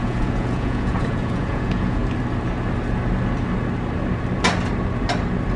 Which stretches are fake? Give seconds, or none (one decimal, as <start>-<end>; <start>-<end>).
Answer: 0.0-2.0